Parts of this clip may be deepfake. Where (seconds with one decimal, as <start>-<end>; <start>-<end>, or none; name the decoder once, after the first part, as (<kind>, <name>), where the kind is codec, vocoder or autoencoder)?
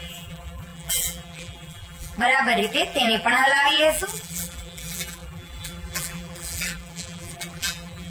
0.0-8.1 (vocoder, BigVGAN v2)